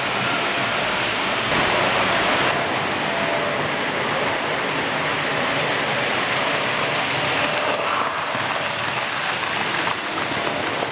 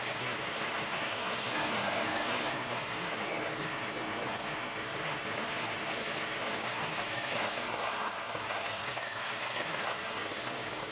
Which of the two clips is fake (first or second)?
second